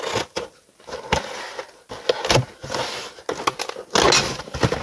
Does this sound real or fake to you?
real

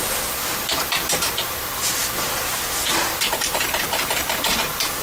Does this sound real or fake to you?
real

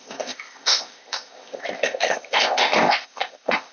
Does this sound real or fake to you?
fake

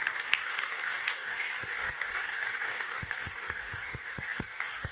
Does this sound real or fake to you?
fake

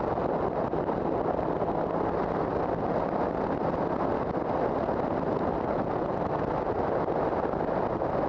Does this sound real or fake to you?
real